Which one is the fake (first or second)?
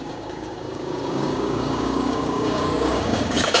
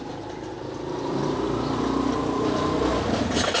first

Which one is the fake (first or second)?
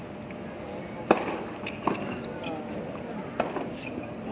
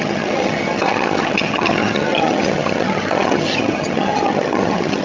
second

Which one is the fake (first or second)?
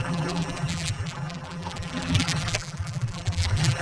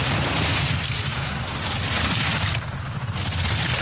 first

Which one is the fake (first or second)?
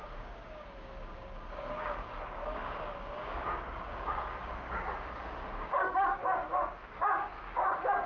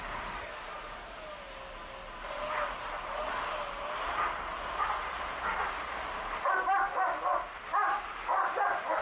first